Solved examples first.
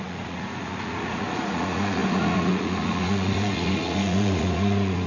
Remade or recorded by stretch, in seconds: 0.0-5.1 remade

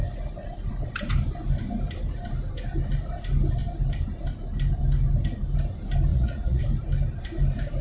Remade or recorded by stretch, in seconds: 0.0-6.1 recorded; 6.1-6.6 remade; 6.6-7.8 recorded

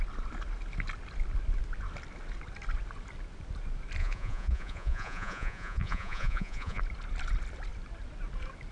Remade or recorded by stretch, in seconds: 0.0-4.0 recorded; 4.0-6.8 remade; 6.8-8.7 recorded

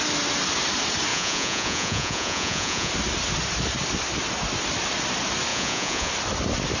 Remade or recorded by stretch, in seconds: 0.0-1.1 recorded; 1.1-2.9 remade; 2.9-5.5 recorded; 5.5-6.1 remade; 6.1-6.8 recorded

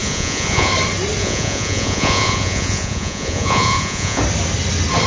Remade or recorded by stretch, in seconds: 0.0-0.7 remade; 0.7-1.2 recorded; 1.2-4.2 remade; 4.2-5.1 recorded